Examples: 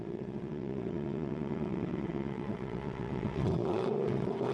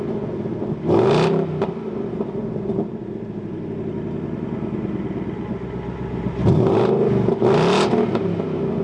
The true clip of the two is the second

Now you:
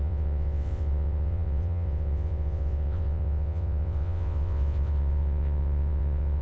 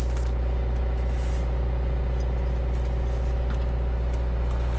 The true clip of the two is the second